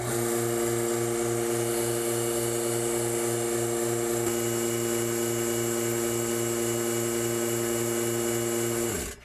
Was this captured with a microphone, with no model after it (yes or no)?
yes